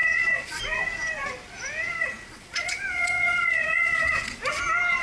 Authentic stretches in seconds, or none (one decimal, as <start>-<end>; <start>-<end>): 0.6-2.0; 4.4-5.0